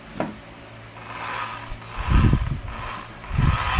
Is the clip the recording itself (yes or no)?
yes